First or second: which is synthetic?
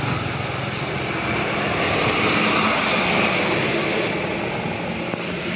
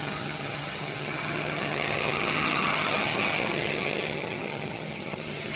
second